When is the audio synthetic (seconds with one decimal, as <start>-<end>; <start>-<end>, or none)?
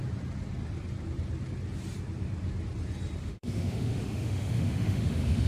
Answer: 3.2-5.5